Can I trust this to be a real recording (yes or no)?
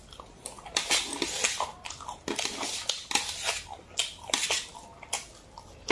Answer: yes